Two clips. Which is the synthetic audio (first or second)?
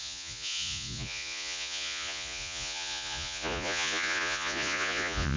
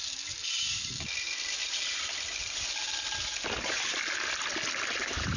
first